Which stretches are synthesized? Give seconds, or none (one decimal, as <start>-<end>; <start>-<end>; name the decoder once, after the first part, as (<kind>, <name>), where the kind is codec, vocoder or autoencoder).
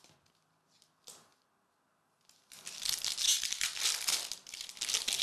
none